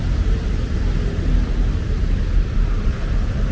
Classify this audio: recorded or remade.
remade